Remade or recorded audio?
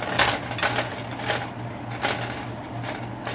recorded